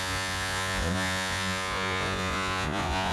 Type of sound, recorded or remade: remade